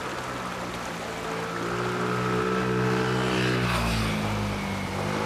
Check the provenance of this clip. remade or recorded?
recorded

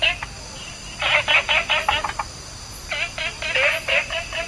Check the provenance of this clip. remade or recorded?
recorded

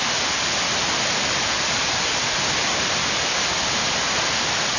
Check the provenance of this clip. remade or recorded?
recorded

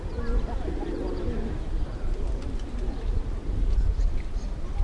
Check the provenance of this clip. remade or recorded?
recorded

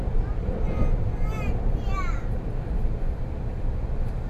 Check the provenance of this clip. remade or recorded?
recorded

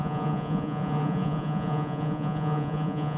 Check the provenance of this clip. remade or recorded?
remade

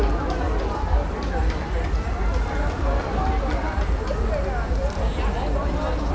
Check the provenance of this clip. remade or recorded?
recorded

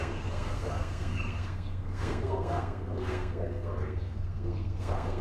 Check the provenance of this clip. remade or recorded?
remade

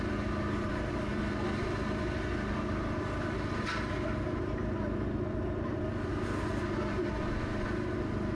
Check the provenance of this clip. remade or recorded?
recorded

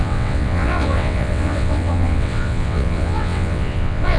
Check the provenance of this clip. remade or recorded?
remade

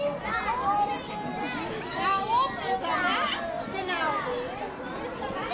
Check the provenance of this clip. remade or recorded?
recorded